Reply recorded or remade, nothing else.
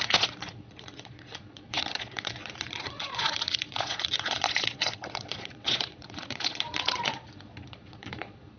remade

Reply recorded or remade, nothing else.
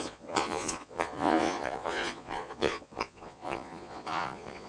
remade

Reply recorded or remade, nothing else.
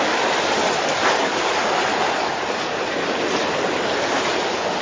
recorded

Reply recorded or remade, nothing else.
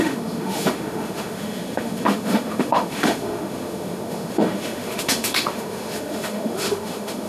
remade